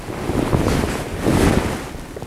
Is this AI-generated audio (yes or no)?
no